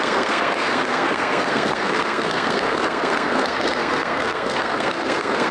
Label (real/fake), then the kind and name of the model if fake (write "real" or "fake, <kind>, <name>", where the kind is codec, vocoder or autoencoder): fake, codec, SNAC